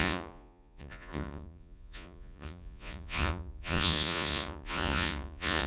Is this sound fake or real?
fake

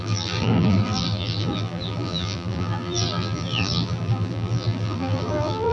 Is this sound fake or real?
fake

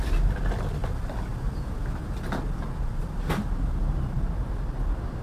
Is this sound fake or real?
real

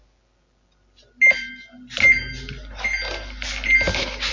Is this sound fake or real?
real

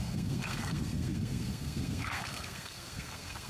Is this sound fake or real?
fake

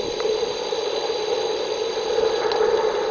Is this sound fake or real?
real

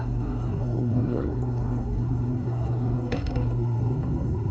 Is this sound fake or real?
fake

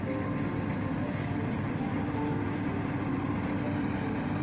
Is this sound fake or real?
real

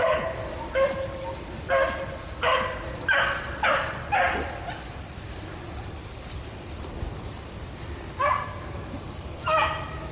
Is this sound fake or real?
real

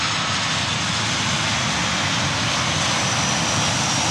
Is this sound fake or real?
real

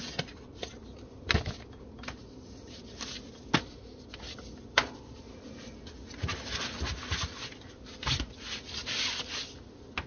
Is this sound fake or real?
real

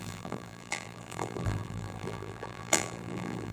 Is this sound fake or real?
fake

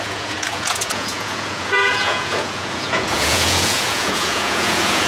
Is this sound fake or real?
fake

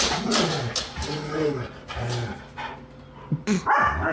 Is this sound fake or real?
real